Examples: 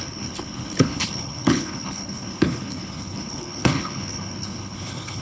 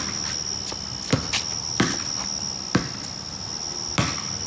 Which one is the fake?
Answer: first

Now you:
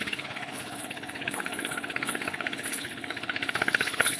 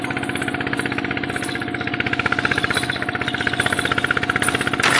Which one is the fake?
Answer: first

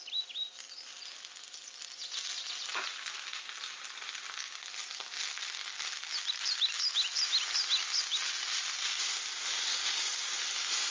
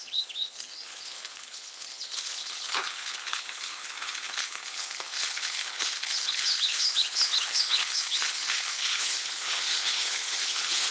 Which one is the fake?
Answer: second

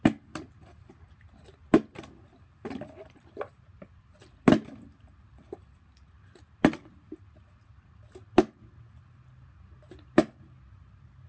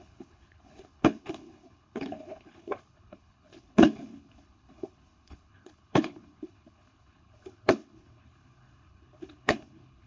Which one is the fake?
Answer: second